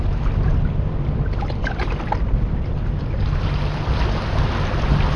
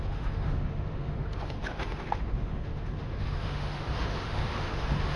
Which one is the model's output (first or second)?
second